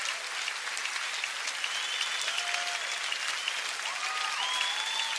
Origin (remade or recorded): recorded